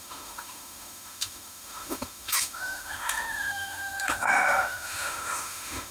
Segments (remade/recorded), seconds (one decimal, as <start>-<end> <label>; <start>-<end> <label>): 0.0-5.9 remade